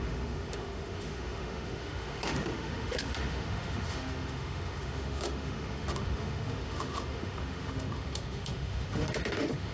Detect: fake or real fake